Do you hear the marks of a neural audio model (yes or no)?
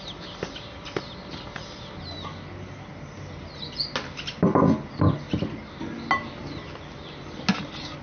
no